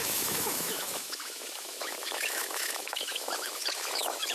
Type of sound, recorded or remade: remade